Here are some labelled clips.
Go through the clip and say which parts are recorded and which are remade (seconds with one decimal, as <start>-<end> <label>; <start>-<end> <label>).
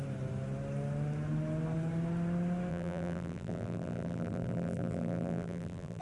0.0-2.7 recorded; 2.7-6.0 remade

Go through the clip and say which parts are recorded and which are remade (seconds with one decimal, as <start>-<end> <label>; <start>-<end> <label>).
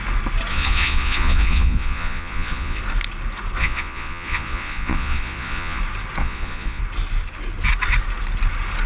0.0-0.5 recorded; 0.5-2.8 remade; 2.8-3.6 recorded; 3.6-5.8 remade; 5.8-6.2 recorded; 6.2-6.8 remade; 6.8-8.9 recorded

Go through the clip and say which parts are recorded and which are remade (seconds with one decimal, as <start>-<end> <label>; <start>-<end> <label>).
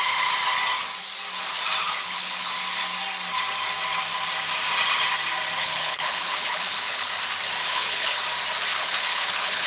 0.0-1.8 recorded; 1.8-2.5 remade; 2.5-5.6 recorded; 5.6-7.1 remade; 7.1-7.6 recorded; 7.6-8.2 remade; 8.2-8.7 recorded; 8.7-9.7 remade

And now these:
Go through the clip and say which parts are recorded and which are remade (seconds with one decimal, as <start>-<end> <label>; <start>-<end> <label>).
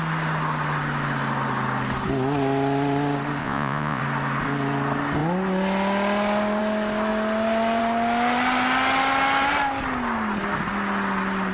0.0-3.4 recorded; 3.4-4.0 remade; 4.0-11.5 recorded